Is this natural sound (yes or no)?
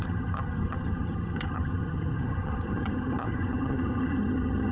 no